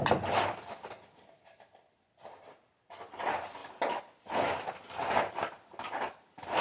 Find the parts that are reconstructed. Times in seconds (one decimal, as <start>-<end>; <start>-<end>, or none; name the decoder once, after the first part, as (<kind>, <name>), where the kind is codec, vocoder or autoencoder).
none